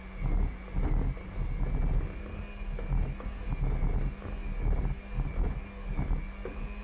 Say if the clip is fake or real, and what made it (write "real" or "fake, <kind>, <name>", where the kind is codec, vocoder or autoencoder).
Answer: real